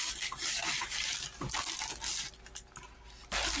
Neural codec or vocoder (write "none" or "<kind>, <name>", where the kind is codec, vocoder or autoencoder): none